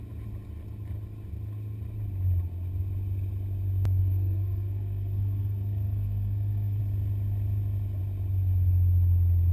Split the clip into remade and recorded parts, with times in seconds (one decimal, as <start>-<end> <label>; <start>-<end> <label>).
0.0-4.0 recorded; 4.0-6.8 remade; 6.8-9.5 recorded